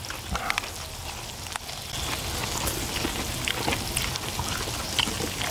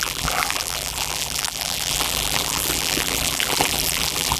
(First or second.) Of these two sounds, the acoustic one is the first